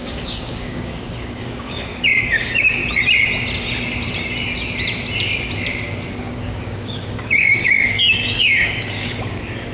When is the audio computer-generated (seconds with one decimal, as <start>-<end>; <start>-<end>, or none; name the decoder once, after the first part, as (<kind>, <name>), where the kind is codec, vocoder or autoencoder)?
0.0-2.8 (codec, DAC); 6.1-9.7